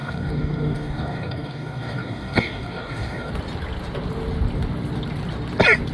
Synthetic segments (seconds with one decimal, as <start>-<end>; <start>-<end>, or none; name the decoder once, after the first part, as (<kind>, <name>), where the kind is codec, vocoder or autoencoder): 0.0-3.3 (codec, DAC)